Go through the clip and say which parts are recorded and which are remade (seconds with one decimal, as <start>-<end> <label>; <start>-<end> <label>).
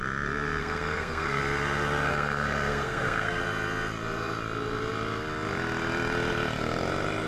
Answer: 0.0-0.6 recorded; 0.6-1.4 remade; 1.4-2.1 recorded; 2.1-3.4 remade; 3.4-7.3 recorded